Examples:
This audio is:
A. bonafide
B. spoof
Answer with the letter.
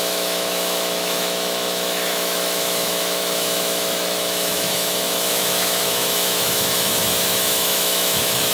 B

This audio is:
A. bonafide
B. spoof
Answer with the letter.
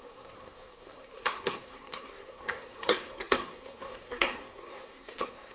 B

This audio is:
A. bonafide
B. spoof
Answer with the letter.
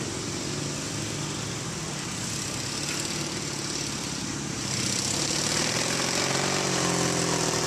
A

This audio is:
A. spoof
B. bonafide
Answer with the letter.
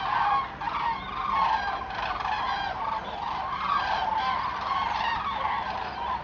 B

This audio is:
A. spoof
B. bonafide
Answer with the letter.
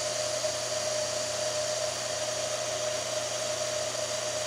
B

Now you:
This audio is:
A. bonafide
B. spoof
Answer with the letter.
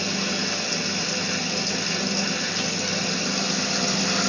A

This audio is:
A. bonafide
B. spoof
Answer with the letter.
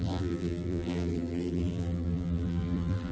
B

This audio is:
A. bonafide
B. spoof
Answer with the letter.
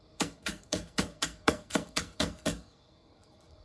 B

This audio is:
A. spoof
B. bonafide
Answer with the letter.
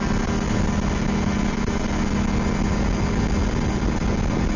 B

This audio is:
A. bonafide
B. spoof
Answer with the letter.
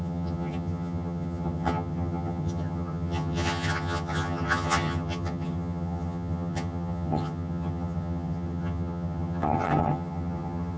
B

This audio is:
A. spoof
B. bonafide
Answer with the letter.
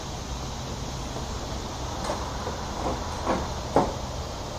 B